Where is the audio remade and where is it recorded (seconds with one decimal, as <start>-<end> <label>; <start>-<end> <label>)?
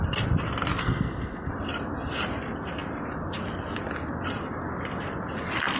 0.0-0.8 recorded; 0.8-1.5 remade; 1.5-5.8 recorded